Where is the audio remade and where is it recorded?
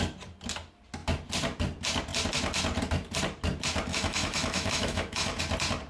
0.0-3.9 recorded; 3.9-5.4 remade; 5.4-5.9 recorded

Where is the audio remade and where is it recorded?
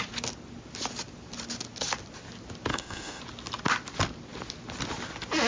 0.0-2.7 recorded; 2.7-3.2 remade; 3.2-5.5 recorded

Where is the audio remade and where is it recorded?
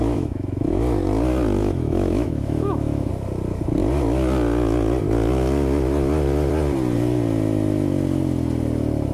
0.0-0.8 remade; 0.8-1.6 recorded; 1.6-3.1 remade; 3.1-9.1 recorded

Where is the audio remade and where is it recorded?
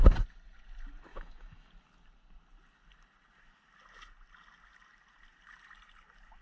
0.0-1.1 recorded; 1.1-1.7 remade; 1.7-6.4 recorded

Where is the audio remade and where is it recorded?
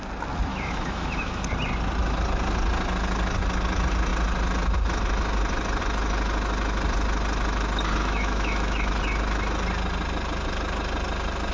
0.0-0.5 recorded; 0.5-1.4 remade; 1.4-8.0 recorded; 8.0-8.9 remade; 8.9-11.5 recorded